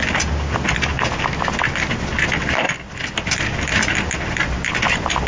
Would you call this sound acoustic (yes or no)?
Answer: yes